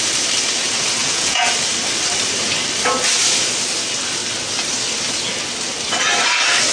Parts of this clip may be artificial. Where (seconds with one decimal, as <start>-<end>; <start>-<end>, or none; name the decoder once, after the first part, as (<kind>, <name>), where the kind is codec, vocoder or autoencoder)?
1.0-1.5 (vocoder, Vocos)